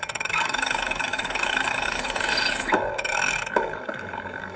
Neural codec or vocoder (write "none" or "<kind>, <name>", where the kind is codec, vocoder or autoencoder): codec, DAC